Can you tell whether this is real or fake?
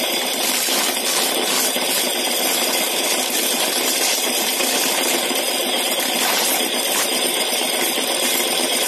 real